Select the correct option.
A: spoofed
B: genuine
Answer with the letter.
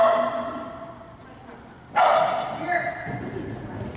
B